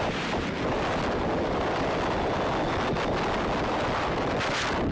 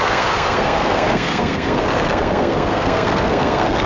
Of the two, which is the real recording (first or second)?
first